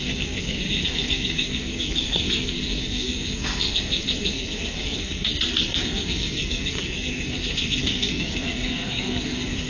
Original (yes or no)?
no